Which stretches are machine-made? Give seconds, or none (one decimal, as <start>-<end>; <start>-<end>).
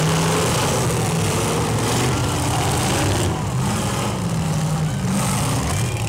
none